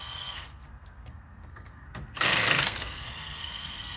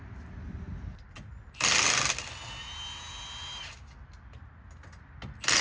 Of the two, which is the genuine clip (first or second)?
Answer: second